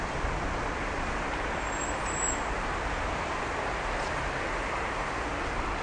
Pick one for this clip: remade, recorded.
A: recorded